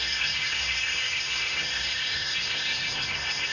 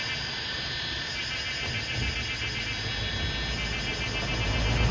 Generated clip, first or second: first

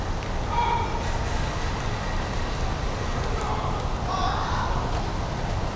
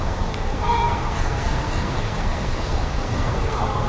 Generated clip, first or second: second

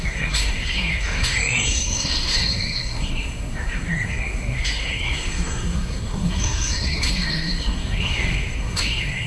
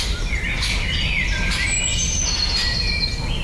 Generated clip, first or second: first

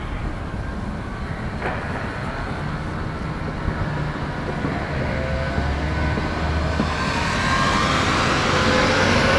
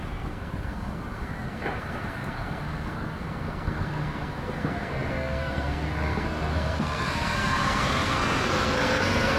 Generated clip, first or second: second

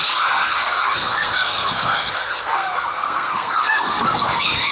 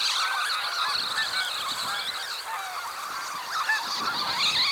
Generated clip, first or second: first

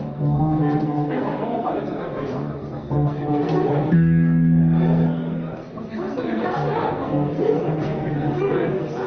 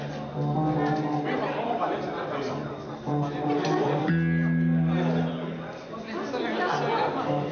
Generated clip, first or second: first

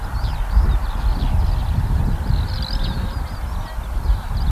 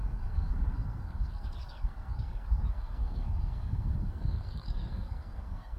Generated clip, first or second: second